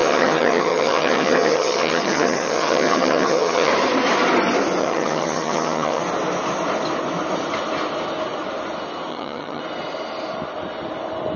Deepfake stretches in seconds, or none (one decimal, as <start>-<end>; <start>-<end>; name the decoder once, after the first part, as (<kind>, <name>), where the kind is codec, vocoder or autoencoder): 0.0-3.7 (vocoder, HiFi-GAN); 4.8-6.0; 9.1-9.6